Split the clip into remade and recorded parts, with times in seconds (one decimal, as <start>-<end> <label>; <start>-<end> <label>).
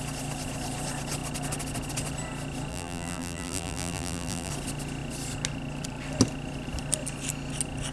0.0-2.7 recorded; 2.7-4.5 remade; 4.5-7.9 recorded